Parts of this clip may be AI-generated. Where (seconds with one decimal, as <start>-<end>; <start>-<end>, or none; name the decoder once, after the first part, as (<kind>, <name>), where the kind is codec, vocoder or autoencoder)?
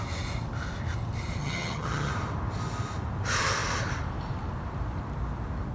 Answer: 1.4-2.1 (vocoder, HiFi-GAN)